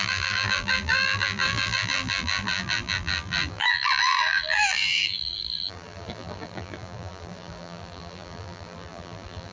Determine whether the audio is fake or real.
fake